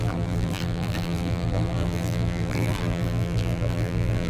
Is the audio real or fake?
fake